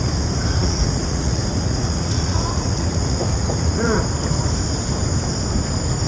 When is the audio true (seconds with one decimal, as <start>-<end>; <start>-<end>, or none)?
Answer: 0.0-0.6; 4.0-6.1